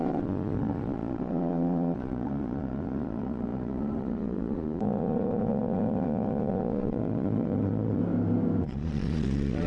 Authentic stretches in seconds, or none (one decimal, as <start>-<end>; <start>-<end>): 8.0-8.6